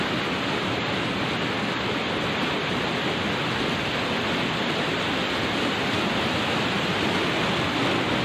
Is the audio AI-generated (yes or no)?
no